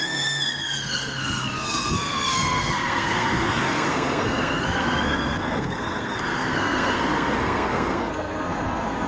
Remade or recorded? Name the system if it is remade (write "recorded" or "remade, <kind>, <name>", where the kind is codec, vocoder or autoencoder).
remade, codec, SNAC